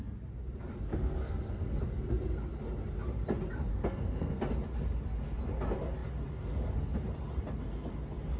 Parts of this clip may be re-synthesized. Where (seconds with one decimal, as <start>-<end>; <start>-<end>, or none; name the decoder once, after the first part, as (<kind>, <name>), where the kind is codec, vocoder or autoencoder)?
0.9-1.8 (codec, SNAC); 3.7-4.4